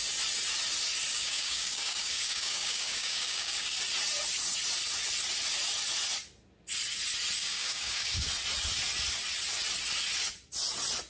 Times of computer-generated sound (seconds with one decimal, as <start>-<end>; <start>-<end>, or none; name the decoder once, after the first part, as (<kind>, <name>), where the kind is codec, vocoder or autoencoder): 1.1-3.8 (codec, DAC); 7.4-8.3